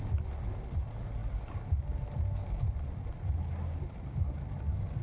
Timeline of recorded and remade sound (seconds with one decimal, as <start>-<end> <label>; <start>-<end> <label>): 0.0-5.0 recorded